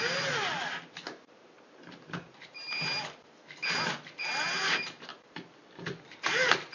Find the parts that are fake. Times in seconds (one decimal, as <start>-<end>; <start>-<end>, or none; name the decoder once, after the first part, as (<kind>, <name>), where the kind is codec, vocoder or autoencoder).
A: none